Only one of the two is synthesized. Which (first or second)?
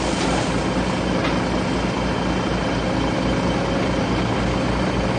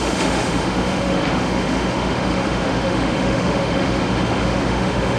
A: second